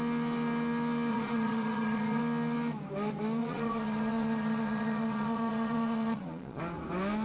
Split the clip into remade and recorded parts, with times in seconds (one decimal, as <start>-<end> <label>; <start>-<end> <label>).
0.0-1.1 recorded; 1.1-2.2 remade; 2.2-3.4 recorded; 3.4-6.6 remade; 6.6-7.2 recorded